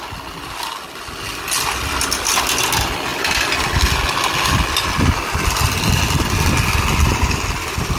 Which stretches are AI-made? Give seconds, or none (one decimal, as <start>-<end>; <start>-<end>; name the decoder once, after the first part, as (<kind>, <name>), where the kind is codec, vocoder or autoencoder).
none